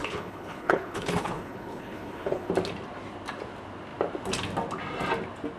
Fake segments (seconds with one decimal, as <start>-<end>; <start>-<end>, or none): 0.0-2.5